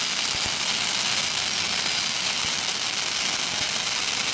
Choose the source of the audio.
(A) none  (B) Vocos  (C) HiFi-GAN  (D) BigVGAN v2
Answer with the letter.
A